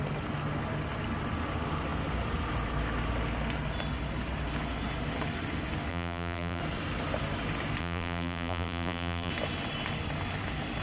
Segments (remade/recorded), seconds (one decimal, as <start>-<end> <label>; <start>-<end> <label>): 0.0-5.9 recorded; 5.9-6.6 remade; 6.6-7.8 recorded; 7.8-9.3 remade; 9.3-10.8 recorded